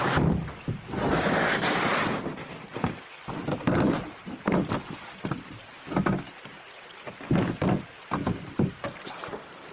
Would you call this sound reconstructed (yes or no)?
no